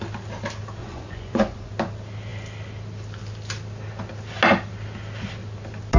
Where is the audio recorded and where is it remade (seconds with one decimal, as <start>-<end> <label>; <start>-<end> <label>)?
0.0-0.8 recorded; 0.8-1.7 remade; 1.7-6.0 recorded